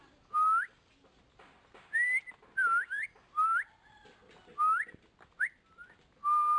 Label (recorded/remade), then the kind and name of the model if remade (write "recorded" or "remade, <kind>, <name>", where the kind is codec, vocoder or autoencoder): recorded